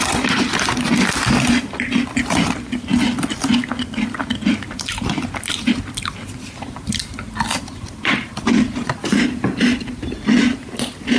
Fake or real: real